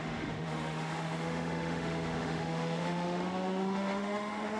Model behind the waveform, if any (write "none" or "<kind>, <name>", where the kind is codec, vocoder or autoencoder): autoencoder, DAC-VAE